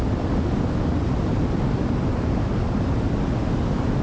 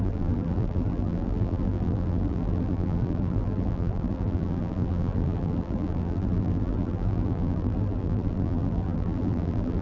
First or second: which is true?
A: first